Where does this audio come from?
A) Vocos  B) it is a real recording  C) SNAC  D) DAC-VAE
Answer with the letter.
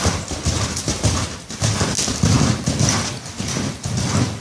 B